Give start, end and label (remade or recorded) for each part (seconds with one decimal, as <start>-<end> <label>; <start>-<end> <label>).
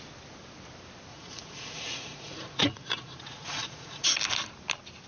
0.0-1.1 recorded; 1.1-4.2 remade; 4.2-5.1 recorded